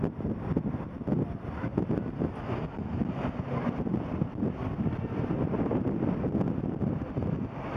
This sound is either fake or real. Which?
real